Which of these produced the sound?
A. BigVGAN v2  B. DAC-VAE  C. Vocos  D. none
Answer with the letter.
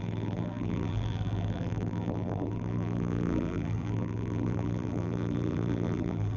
A